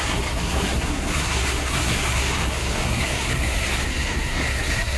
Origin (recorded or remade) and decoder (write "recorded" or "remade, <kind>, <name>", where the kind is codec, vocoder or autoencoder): remade, codec, SNAC